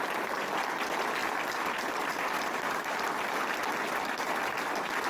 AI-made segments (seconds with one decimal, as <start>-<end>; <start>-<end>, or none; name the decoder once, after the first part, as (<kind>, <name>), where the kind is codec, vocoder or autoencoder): none

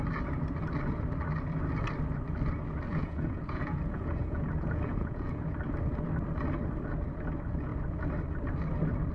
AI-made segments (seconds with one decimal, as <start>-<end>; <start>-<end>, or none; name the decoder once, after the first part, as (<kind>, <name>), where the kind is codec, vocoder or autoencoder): 2.9-5.4 (vocoder, Vocos)

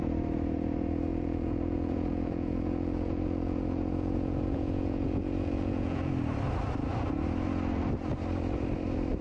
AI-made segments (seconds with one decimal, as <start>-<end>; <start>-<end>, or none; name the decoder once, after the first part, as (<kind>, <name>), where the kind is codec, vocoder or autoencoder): 1.1-6.1 (vocoder, Vocos)

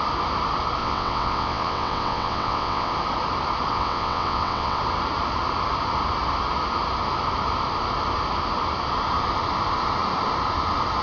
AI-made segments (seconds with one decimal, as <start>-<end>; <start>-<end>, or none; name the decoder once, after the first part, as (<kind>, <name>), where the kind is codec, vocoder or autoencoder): 0.8-2.9 (vocoder, WaveNeXt); 3.7-4.8

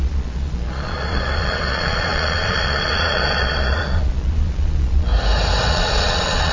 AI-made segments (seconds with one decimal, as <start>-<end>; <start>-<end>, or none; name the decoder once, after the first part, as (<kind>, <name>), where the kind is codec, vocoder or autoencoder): 0.0-5.1 (vocoder, Vocos); 5.7-6.5

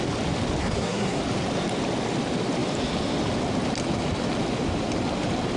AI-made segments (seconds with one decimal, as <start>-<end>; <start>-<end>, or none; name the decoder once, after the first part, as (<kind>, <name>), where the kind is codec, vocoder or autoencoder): 0.6-1.2 (codec, SNAC)